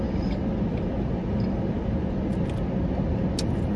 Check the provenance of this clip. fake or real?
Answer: real